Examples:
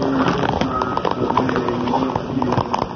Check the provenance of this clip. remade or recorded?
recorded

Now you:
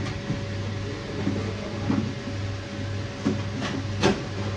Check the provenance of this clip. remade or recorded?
recorded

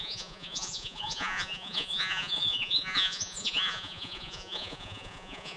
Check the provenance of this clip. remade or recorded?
remade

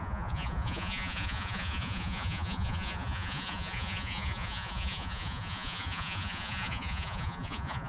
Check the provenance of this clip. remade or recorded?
remade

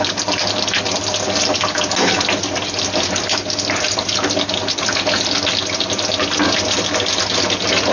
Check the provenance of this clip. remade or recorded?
recorded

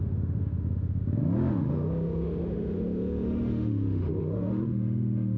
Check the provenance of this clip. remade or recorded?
remade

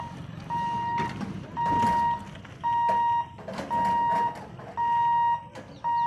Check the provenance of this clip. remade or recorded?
recorded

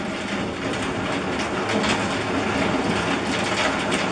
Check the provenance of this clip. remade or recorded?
recorded